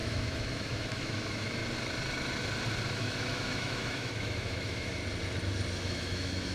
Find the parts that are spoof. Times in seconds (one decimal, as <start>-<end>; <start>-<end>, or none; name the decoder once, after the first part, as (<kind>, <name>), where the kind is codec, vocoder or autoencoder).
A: 0.0-1.6 (autoencoder, DAC-VAE); 2.9-5.0; 5.8-6.5